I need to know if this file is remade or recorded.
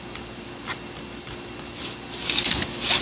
recorded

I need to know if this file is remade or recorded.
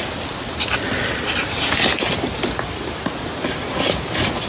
recorded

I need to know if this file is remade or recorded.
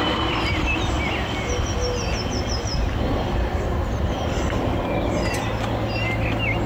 recorded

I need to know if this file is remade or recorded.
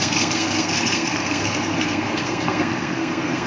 remade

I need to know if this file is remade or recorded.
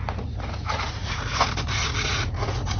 remade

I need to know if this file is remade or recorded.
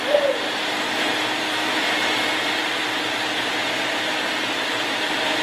recorded